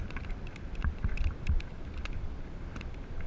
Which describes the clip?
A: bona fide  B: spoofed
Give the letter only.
A